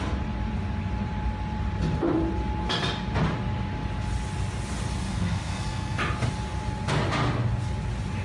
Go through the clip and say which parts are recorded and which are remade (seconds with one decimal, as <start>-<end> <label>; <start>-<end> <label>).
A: 0.0-5.0 recorded; 5.0-6.0 remade; 6.0-8.2 recorded